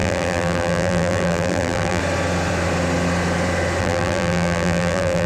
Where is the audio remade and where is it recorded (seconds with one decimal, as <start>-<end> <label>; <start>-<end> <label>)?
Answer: 0.0-2.0 remade; 2.0-3.8 recorded; 3.8-5.3 remade